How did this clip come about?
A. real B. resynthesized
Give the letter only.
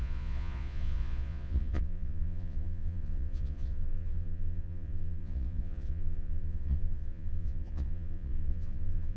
B